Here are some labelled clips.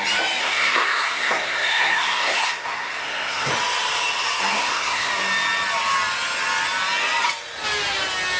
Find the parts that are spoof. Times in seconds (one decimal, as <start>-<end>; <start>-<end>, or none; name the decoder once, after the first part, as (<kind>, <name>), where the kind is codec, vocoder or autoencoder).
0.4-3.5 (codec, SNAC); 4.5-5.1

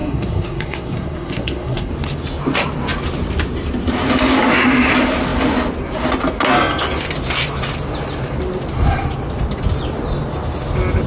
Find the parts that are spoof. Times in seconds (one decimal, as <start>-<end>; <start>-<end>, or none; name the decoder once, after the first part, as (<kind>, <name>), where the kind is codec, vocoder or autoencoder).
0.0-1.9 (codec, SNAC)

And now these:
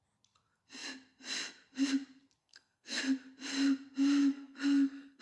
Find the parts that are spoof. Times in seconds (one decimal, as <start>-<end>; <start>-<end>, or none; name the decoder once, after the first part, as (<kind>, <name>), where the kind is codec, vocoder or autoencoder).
2.4-3.0 (codec, SNAC); 4.2-5.2